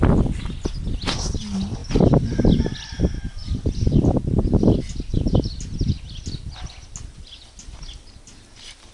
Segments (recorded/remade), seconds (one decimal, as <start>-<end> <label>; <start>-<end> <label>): 0.0-8.9 recorded